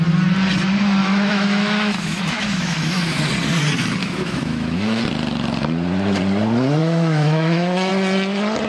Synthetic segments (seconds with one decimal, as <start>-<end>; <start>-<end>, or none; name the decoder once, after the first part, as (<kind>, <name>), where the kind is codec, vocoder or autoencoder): 1.0-3.2 (autoencoder, DAC-VAE); 4.0-5.0; 6.8-7.9